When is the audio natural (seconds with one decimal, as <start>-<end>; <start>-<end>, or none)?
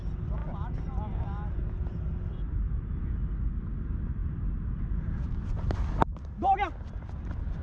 0.0-7.6